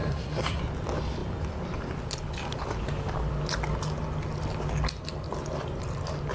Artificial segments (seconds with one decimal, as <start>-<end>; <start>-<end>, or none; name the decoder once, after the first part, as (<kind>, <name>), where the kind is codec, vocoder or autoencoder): 0.0-0.6 (codec, SNAC)